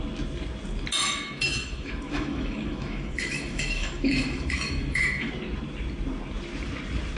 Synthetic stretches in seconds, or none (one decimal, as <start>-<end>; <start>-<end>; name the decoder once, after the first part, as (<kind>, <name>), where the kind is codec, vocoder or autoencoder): 1.0-5.3 (autoencoder, DAC-VAE)